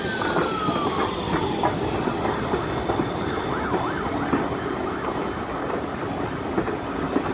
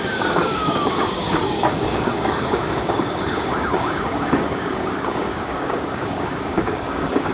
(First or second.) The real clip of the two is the first